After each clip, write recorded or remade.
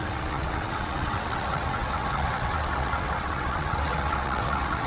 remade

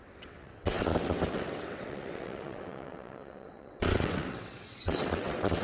remade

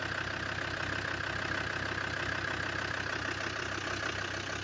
recorded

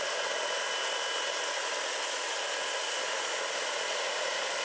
recorded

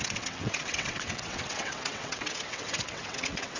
remade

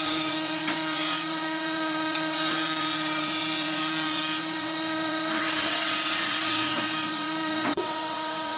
remade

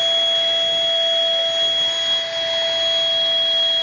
recorded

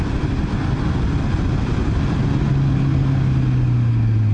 recorded